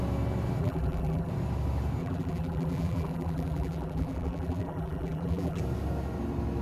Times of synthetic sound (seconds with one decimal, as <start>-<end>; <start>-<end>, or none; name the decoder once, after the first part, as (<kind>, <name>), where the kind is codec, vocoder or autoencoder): 0.6-1.3 (vocoder, BigVGAN v2); 2.0-5.6